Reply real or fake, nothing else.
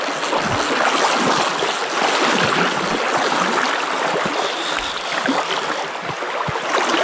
real